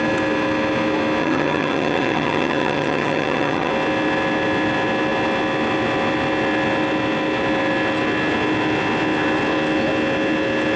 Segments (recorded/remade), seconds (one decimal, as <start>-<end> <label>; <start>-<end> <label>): 0.0-1.2 recorded; 1.2-3.7 remade; 3.7-10.8 recorded